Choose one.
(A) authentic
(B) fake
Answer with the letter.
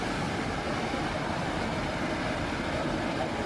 A